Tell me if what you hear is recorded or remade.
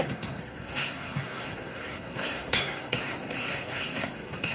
remade